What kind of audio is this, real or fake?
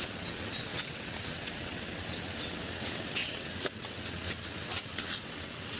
fake